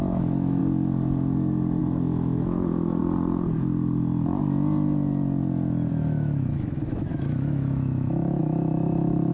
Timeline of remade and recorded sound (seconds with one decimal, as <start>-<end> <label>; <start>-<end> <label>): 0.0-0.6 remade; 0.6-1.8 recorded; 1.8-3.0 remade; 3.0-5.9 recorded; 5.9-9.3 remade